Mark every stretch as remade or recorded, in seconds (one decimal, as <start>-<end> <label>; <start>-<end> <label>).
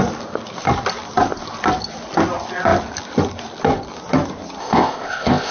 0.0-4.6 recorded; 4.6-5.5 remade